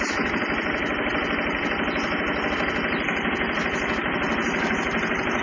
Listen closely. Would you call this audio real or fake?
real